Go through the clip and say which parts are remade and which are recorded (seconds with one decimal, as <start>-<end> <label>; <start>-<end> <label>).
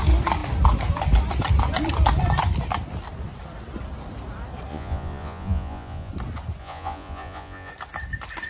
0.0-4.7 recorded; 4.7-6.1 remade; 6.1-6.6 recorded; 6.6-7.7 remade; 7.7-8.5 recorded